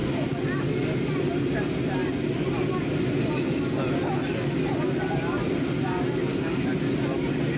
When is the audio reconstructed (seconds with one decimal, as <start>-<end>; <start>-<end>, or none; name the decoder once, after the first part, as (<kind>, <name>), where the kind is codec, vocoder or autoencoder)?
none